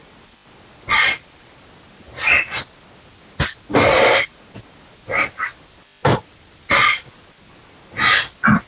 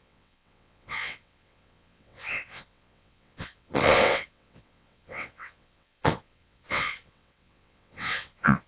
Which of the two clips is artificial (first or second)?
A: second